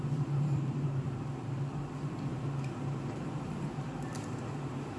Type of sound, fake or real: fake